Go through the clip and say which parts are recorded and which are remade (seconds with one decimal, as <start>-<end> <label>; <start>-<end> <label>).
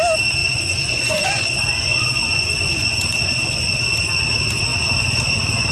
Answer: 0.0-0.4 recorded; 0.4-3.8 remade; 3.8-4.7 recorded; 4.7-5.2 remade; 5.2-5.7 recorded